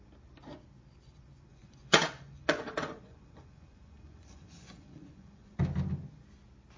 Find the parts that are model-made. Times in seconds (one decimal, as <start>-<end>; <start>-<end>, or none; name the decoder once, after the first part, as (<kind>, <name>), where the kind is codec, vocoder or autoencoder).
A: 1.5-5.6 (vocoder, Vocos)